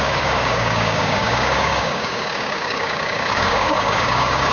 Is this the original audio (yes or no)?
no